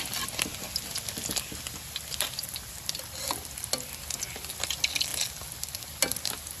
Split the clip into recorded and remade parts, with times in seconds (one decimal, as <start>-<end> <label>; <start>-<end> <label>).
0.0-6.6 recorded